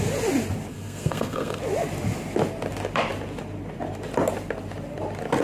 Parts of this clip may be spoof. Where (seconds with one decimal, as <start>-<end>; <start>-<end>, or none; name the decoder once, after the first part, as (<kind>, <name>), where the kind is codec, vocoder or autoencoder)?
0.7-1.6 (codec, SNAC)